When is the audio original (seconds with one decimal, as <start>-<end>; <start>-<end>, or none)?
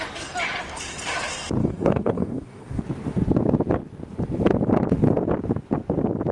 0.0-1.6; 2.8-6.3